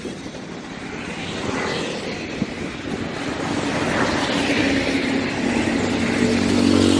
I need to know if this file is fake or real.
real